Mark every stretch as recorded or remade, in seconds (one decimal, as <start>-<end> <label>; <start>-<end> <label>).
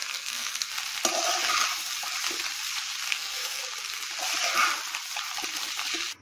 0.0-0.7 remade; 0.7-3.1 recorded; 3.1-3.6 remade; 3.6-6.2 recorded